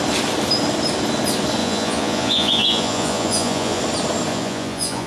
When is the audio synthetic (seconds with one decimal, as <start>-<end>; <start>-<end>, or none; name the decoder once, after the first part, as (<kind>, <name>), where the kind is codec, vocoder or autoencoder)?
1.6-3.8 (vocoder, Vocos); 4.3-5.1